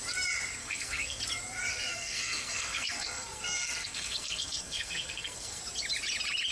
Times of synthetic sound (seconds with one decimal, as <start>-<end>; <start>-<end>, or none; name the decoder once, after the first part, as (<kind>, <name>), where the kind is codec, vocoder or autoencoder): 0.6-1.2 (codec, SNAC); 1.7-5.6